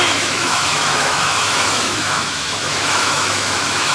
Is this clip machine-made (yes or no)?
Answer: yes